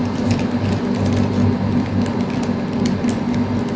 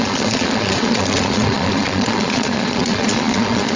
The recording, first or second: first